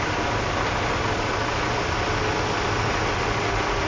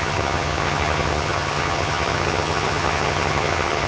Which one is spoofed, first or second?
second